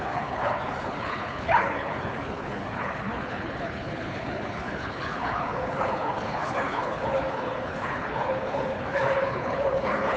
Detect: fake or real fake